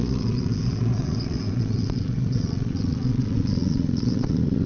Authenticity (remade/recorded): remade